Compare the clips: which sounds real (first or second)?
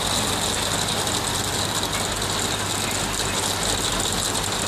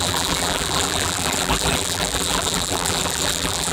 first